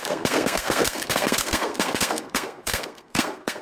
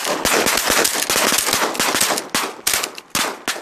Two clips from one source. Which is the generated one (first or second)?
first